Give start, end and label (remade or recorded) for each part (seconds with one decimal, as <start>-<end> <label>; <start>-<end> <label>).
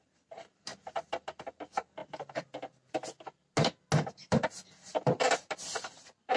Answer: 0.0-0.7 remade; 0.7-1.6 recorded; 1.6-3.0 remade; 3.0-4.2 recorded; 4.2-6.4 remade